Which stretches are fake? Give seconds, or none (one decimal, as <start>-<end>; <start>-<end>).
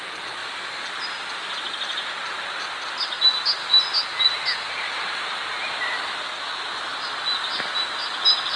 none